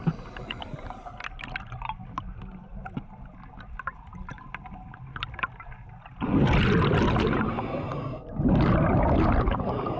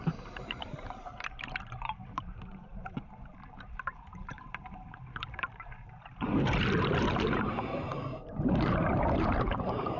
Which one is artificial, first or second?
second